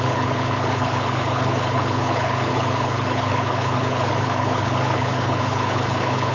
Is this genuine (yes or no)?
no